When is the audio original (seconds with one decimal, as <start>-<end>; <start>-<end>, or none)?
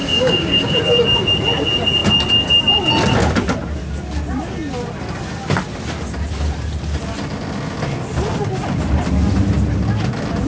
0.8-10.5